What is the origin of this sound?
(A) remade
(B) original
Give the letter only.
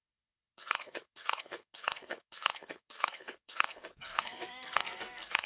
A